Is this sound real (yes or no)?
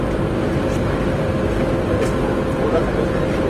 yes